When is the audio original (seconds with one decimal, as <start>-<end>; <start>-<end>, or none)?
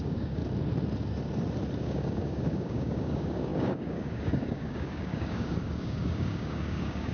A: 0.4-1.8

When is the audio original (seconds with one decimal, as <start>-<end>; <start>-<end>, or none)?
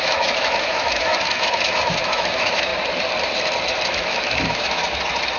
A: 2.7-3.9; 4.8-5.4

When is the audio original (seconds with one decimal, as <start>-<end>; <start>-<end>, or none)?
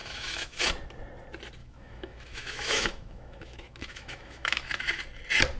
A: 0.7-1.6; 5.0-5.6